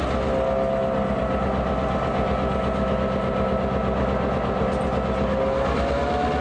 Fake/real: real